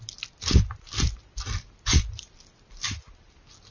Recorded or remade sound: recorded